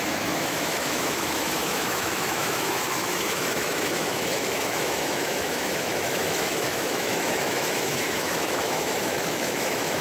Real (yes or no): no